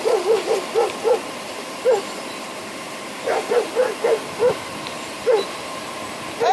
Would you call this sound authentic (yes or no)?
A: no